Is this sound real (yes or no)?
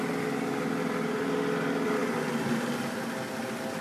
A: yes